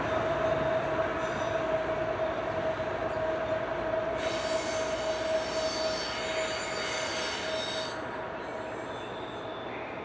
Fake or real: real